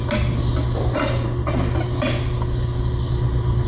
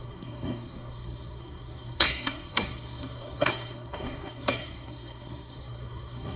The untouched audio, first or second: first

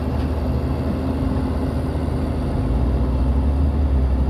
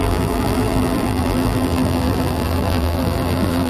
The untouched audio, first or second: first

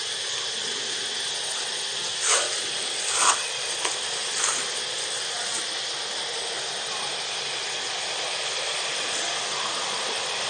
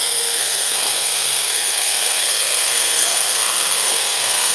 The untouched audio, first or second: first